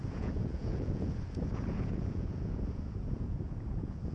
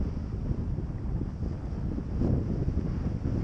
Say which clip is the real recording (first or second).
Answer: second